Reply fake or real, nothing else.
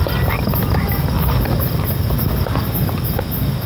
real